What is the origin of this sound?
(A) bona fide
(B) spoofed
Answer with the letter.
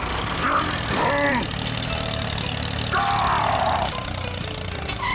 A